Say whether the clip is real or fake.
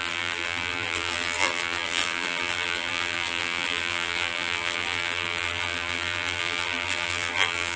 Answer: fake